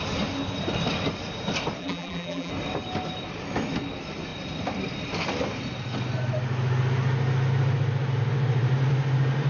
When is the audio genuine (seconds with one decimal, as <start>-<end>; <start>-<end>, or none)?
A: 0.0-1.8; 2.5-9.5